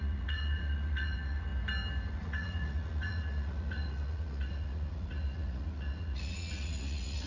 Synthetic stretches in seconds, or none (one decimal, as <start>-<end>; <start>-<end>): 0.0-1.5; 2.1-7.3